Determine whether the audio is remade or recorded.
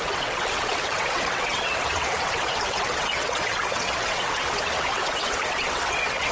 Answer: remade